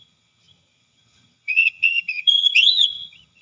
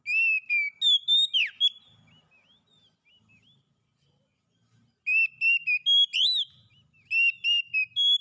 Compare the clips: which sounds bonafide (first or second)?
second